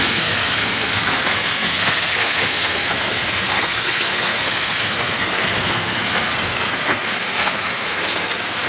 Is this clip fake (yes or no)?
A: yes